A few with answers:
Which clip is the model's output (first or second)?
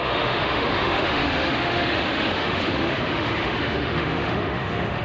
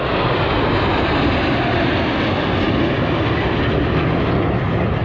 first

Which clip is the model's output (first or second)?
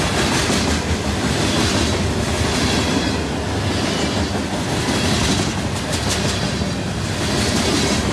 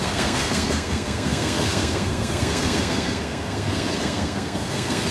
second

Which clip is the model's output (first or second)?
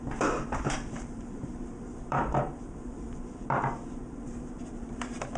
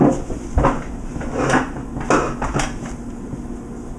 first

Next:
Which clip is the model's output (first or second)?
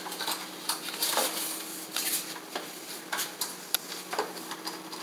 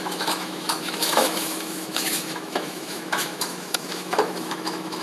second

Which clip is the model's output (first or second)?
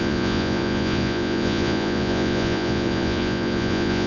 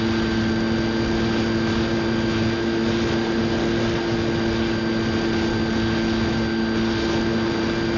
first